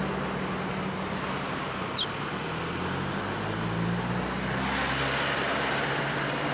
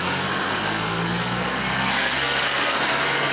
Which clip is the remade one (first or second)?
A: second